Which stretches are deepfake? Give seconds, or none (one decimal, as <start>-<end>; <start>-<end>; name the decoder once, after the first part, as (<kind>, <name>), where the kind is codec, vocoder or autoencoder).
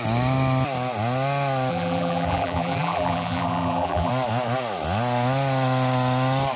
1.7-4.1 (vocoder, BigVGAN v2)